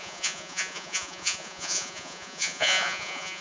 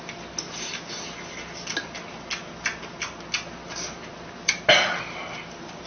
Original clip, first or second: second